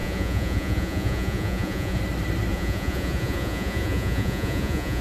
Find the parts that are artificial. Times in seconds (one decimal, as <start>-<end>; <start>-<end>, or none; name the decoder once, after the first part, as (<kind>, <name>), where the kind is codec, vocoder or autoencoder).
0.0-2.0 (vocoder, Vocos); 2.5-5.0